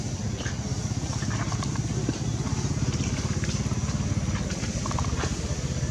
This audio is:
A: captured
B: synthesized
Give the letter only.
A